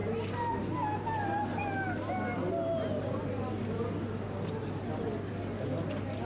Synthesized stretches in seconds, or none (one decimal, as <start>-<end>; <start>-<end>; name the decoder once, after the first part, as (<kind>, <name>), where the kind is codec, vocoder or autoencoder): none